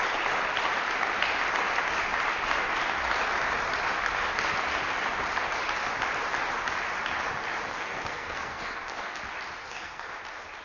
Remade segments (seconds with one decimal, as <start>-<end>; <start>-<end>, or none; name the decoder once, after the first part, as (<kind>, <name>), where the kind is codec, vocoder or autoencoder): 7.7-9.2 (codec, SNAC); 9.6-10.2